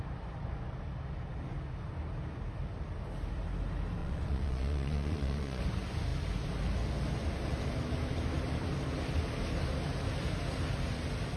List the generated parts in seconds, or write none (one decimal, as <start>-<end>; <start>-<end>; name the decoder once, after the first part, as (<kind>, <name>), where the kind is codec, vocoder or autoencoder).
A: 4.0-5.6 (vocoder, Vocos)